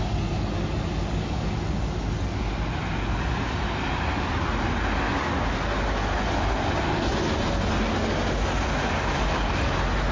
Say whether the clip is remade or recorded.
recorded